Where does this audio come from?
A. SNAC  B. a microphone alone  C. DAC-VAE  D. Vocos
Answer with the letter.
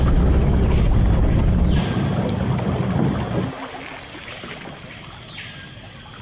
B